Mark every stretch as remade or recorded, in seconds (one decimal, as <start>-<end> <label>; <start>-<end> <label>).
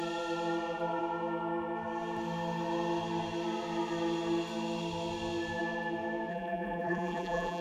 0.0-6.3 recorded; 6.3-7.6 remade